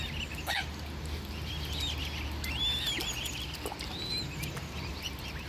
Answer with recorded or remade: recorded